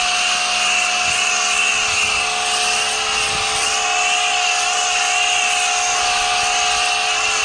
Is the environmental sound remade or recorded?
recorded